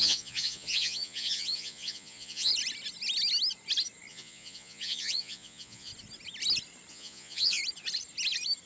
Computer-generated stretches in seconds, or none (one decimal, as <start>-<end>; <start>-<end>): 0.0-2.5; 4.1-5.9; 6.9-7.6